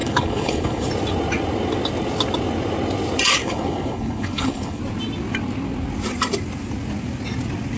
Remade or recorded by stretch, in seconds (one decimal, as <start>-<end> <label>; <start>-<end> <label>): 0.0-0.9 remade; 0.9-3.4 recorded; 3.4-4.8 remade; 4.8-7.8 recorded